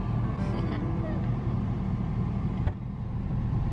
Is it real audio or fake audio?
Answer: fake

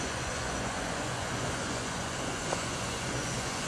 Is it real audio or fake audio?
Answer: fake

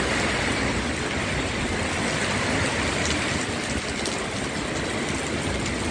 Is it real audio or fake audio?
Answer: real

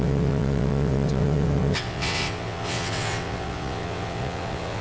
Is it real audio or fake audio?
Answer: fake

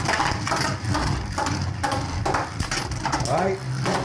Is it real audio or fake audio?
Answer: real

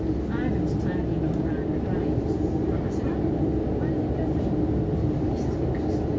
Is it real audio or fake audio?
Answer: real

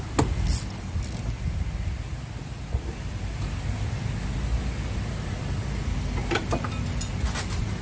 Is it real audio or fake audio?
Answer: real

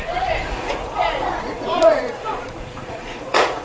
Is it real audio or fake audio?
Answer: fake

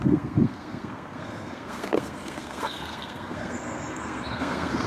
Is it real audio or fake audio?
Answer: fake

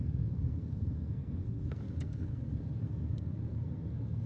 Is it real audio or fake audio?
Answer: fake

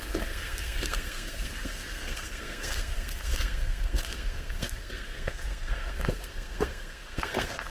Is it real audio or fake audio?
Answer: fake